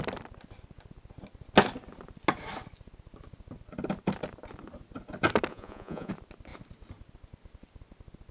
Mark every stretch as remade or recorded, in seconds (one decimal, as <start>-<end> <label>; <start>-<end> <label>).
0.0-5.5 recorded; 5.5-6.1 remade; 6.1-8.3 recorded